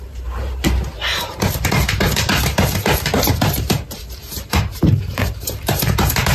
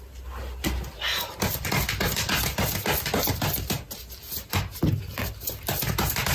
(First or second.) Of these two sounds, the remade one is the first